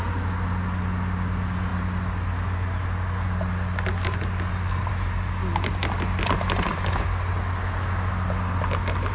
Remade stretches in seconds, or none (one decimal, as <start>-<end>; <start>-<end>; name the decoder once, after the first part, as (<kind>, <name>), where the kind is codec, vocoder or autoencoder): none